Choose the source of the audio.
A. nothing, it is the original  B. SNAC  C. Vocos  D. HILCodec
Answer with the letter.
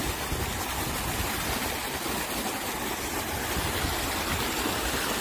A